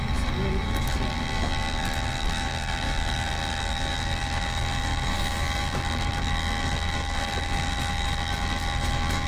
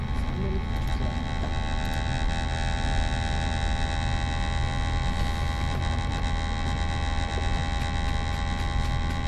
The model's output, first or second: first